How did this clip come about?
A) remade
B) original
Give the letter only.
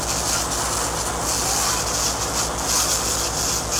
B